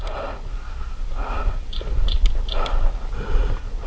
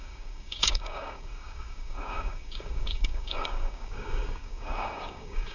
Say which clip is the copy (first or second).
second